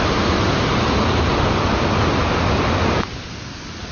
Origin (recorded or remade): recorded